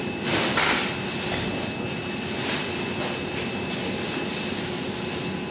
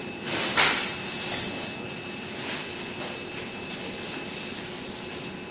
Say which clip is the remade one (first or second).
first